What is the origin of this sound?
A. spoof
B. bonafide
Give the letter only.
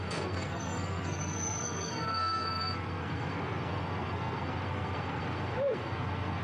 A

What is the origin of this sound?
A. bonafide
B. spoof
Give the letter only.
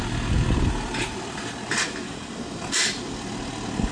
A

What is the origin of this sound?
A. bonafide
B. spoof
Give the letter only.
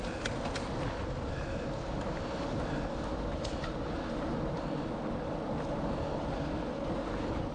A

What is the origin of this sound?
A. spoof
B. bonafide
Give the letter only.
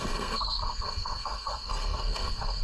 A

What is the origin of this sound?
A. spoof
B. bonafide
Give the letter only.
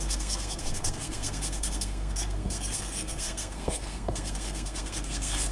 A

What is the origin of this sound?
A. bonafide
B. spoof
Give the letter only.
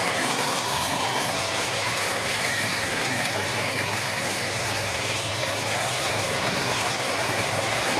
B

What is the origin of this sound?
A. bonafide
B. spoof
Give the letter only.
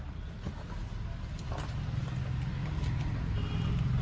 A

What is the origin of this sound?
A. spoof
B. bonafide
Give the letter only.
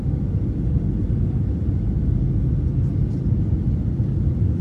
B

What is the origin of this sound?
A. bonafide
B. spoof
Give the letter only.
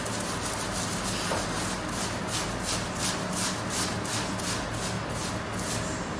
A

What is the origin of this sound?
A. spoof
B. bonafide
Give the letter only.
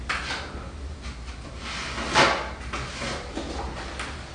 B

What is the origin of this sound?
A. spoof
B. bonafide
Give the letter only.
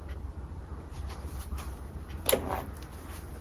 B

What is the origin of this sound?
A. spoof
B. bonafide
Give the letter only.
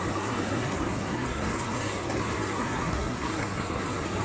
A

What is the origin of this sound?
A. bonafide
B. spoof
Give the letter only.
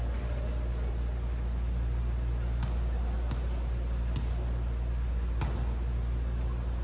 A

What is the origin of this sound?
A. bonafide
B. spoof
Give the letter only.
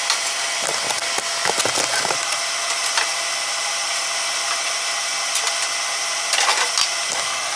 A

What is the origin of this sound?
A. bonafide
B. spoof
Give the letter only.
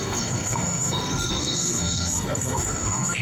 B